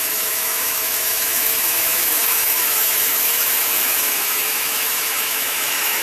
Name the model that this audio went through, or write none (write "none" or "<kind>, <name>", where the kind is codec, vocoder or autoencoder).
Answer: autoencoder, DAC-VAE